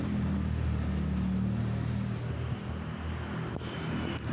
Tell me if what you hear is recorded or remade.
recorded